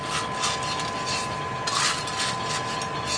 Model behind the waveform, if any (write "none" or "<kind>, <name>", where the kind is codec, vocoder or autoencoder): none